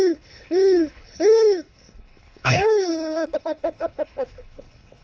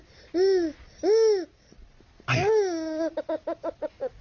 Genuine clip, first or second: second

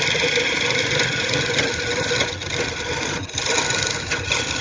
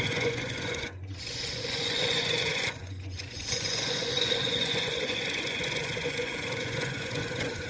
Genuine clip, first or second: first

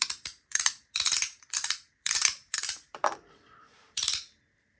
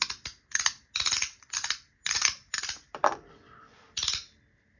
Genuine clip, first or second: second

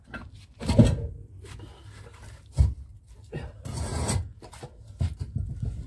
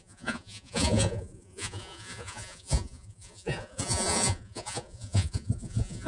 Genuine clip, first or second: first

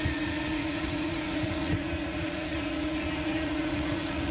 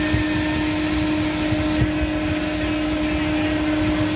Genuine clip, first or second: second